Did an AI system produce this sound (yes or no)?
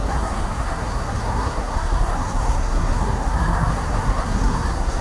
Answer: yes